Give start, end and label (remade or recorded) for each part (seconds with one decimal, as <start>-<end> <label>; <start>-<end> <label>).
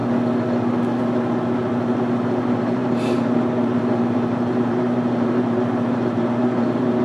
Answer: 0.0-2.4 recorded; 2.4-7.0 remade